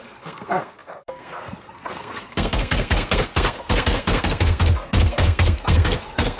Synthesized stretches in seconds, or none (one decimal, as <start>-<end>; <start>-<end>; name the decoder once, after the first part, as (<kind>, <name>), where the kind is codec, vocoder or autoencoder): 0.0-6.4 (codec, SNAC)